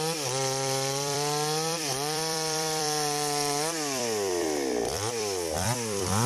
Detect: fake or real fake